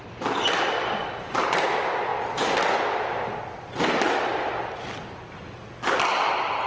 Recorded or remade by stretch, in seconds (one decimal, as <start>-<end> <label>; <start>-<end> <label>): 0.0-6.7 remade